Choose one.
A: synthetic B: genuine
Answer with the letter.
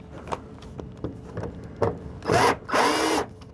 B